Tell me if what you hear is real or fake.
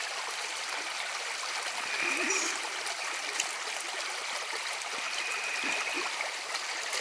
real